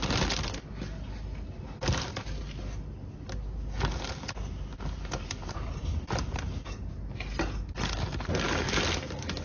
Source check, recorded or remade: recorded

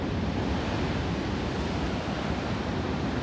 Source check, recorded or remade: recorded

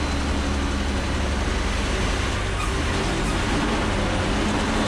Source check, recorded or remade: recorded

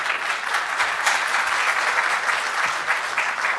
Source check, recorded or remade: recorded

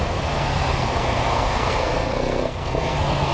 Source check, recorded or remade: remade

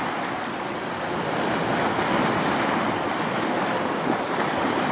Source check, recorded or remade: recorded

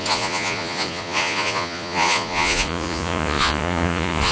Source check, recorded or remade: remade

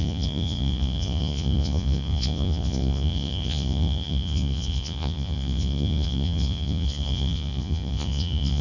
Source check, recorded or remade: remade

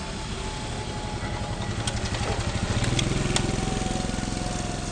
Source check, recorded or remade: recorded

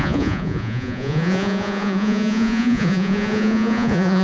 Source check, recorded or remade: remade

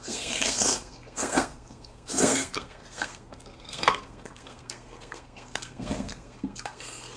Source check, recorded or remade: remade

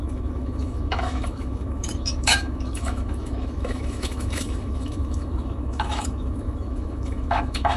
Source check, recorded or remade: remade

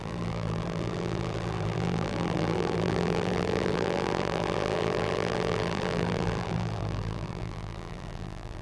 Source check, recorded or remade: remade